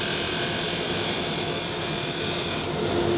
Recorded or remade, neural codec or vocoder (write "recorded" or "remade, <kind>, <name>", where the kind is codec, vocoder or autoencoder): recorded